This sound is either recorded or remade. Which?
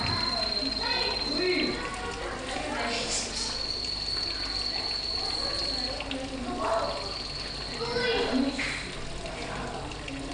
recorded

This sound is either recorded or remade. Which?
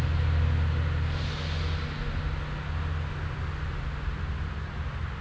recorded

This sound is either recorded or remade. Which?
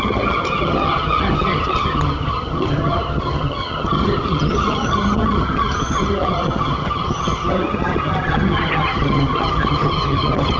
remade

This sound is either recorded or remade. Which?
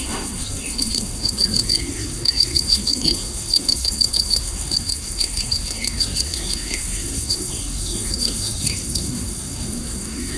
remade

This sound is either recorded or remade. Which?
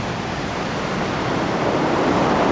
recorded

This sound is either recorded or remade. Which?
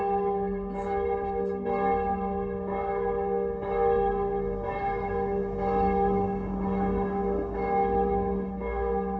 remade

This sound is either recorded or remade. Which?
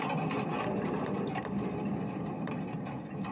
recorded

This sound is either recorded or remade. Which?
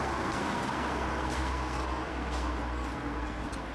remade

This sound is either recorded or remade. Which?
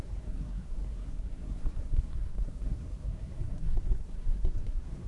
remade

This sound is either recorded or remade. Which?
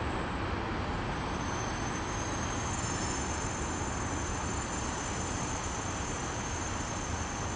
recorded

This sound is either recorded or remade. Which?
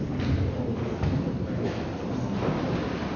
recorded